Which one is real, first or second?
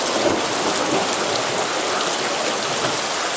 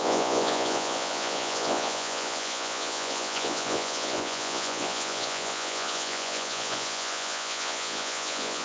first